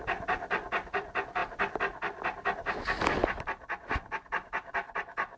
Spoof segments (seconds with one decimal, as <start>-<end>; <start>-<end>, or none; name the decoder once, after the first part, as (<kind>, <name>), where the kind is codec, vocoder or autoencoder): none